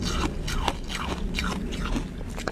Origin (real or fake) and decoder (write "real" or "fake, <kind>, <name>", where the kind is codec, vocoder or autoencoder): real